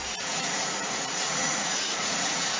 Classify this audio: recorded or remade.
remade